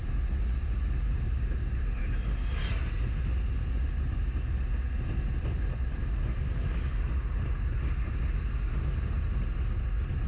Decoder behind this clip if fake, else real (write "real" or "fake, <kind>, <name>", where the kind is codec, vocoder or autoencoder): real